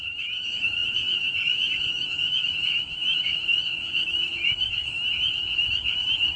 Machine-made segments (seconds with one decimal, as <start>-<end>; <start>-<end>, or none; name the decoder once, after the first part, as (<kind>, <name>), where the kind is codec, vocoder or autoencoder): 0.0-6.4 (autoencoder, DAC-VAE)